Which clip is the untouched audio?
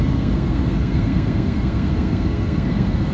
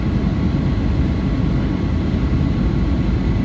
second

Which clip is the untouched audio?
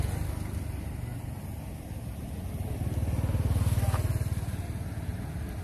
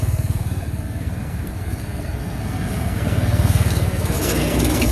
first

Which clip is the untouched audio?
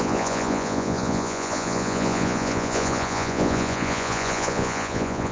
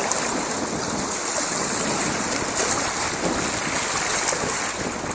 second